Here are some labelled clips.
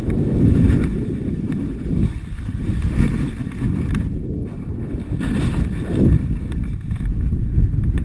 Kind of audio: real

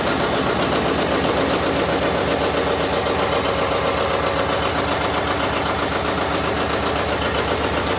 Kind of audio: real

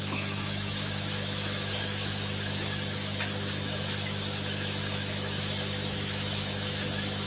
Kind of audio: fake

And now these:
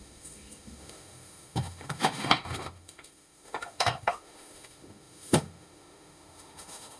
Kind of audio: fake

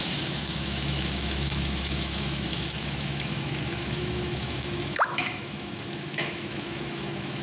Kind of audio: fake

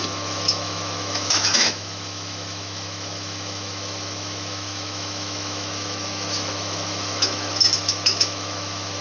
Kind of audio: fake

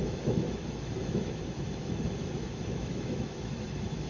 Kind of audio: fake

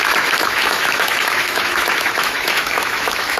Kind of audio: fake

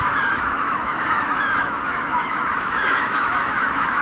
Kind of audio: fake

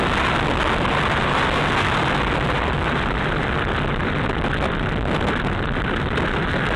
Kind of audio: real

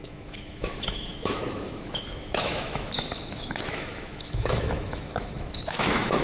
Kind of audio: fake